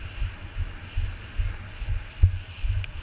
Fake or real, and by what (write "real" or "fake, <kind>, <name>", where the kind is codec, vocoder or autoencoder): real